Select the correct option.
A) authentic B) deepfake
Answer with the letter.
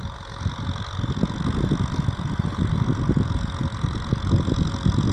A